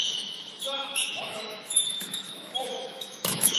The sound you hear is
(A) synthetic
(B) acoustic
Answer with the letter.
A